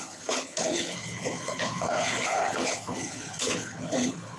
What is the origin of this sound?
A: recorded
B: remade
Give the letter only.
B